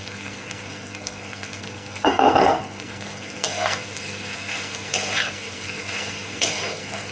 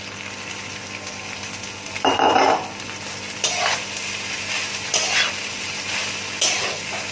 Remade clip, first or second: first